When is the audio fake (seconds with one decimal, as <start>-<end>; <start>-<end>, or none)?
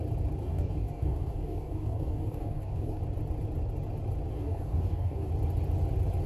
0.4-3.0; 4.3-5.3